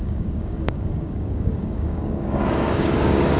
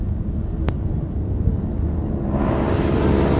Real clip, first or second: second